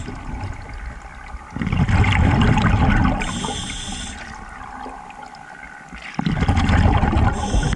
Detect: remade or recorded recorded